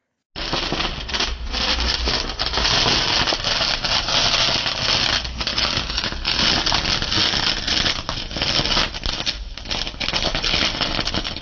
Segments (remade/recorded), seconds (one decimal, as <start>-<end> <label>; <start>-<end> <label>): 0.0-11.4 recorded